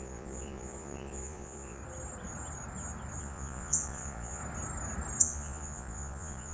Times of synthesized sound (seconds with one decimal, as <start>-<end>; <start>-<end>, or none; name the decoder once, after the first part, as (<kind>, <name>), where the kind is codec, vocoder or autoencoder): 0.0-1.8 (vocoder, Vocos); 3.2-4.4; 5.2-6.5